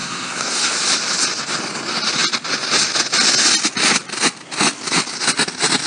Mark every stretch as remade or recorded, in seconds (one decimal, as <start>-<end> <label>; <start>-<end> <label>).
0.0-0.7 remade; 0.7-5.9 recorded